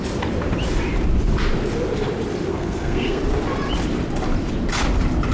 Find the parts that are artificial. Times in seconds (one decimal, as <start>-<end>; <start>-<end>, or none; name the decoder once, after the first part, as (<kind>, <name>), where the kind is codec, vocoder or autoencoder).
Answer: 2.5-3.2 (codec, SNAC)